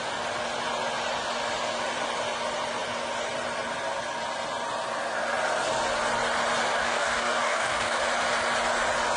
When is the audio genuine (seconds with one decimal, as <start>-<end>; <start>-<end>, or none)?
0.0-6.7; 8.0-9.2